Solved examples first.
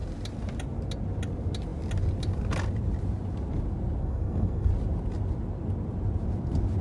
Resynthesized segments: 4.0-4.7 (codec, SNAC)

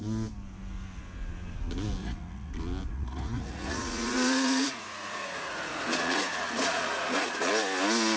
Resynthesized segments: 2.0-2.5 (vocoder, Vocos); 2.9-7.5

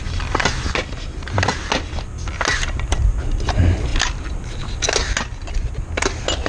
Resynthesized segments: none

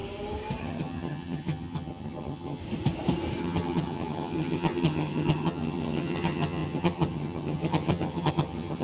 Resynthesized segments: 0.6-2.6 (vocoder, HiFi-GAN); 3.4-8.8